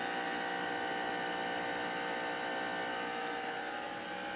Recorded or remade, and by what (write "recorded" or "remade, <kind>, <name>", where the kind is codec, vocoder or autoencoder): recorded